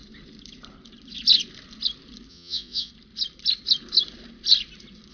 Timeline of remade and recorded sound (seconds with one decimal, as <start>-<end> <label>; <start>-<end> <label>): 0.0-2.3 recorded; 2.3-2.9 remade; 2.9-5.1 recorded